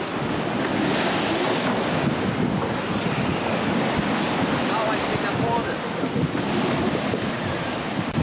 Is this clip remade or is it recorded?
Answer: recorded